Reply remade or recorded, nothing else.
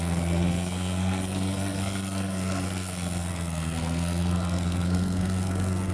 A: remade